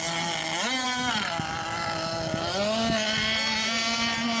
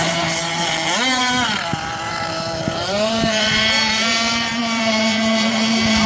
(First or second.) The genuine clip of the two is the first